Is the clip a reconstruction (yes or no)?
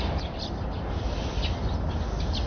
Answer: no